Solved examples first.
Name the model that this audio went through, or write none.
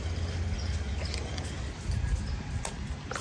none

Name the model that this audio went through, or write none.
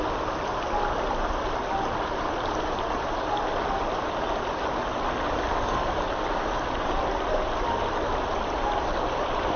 none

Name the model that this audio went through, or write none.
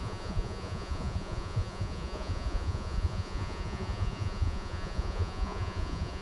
vocoder, Vocos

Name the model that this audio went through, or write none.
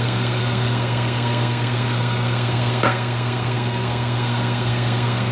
codec, SNAC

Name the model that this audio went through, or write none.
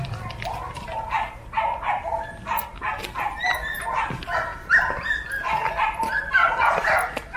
none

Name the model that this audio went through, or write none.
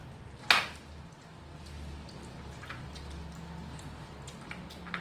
none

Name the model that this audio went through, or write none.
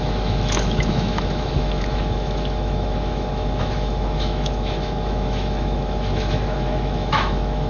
autoencoder, DAC-VAE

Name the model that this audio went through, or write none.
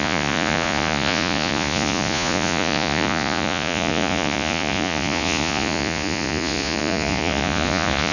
vocoder, Vocos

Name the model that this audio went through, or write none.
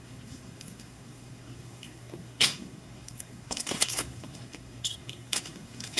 codec, SNAC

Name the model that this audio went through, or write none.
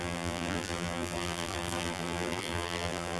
vocoder, BigVGAN v2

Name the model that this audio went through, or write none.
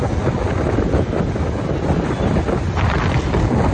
none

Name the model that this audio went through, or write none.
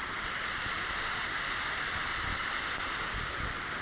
none